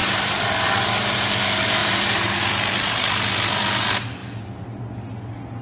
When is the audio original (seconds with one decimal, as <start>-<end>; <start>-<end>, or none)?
1.3-1.8; 2.4-4.2; 4.8-5.6